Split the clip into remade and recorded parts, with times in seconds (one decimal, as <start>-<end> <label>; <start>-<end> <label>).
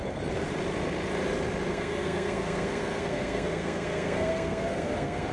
0.0-1.7 recorded; 1.7-5.3 remade